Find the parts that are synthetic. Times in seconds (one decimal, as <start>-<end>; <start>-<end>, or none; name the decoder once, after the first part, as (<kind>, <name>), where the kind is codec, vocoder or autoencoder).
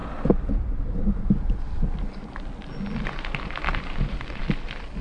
3.7-4.4 (vocoder, BigVGAN v2)